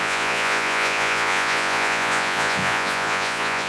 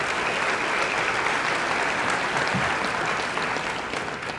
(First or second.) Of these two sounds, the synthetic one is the first